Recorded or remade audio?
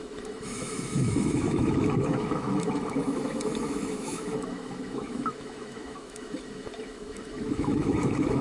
remade